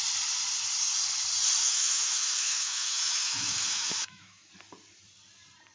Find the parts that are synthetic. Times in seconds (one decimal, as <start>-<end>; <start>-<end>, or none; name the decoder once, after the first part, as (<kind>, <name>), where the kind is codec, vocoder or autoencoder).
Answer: 1.6-4.5 (autoencoder, DAC-VAE)